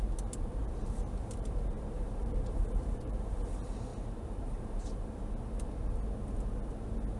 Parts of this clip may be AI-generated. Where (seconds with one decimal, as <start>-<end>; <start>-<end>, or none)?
0.6-3.4; 3.9-5.3

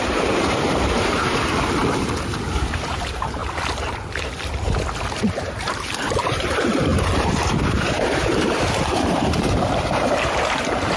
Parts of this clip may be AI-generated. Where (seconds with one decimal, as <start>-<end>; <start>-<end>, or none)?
0.0-3.4; 5.2-11.0